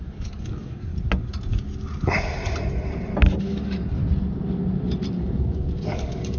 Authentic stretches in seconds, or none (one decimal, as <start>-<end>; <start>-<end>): 0.9-3.4; 4.0-5.1